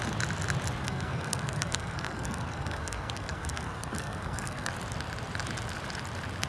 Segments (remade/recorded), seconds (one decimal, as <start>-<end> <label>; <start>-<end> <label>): 0.0-0.8 recorded; 0.8-4.7 remade; 4.7-6.5 recorded